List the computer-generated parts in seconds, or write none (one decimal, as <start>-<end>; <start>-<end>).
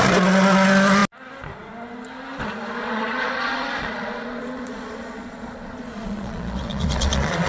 2.8-7.5